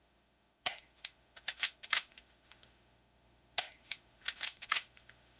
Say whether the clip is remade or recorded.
remade